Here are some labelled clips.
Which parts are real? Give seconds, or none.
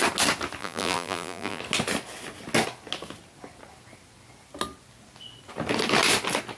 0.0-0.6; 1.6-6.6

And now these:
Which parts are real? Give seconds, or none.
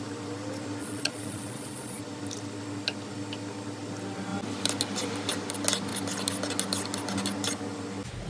0.0-0.8; 2.0-8.3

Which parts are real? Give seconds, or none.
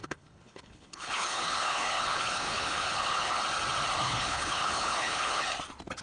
3.4-4.0; 5.4-6.0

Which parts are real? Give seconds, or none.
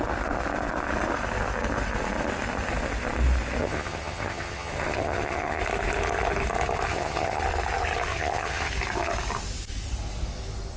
0.0-3.6; 5.6-6.9; 7.4-8.1; 8.7-10.8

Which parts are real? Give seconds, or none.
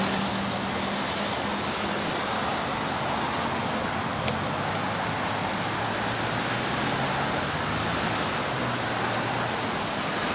0.0-10.3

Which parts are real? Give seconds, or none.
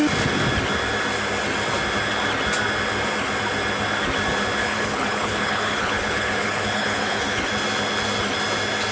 0.0-4.6; 7.4-8.9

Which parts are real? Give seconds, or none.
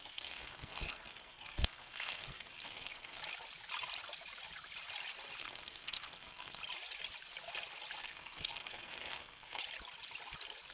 3.2-5.4; 6.6-8.0; 9.6-10.7